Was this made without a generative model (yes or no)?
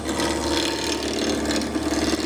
yes